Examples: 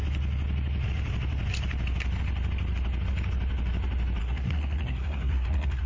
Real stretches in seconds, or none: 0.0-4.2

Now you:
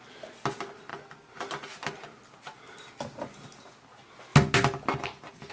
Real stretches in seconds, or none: 0.0-5.5

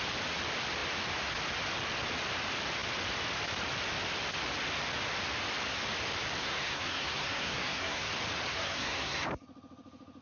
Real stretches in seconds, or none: 0.0-6.4; 8.1-8.5; 9.3-10.2